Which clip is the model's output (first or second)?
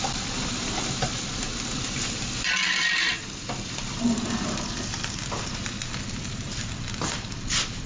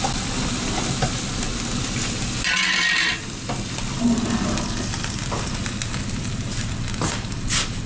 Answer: first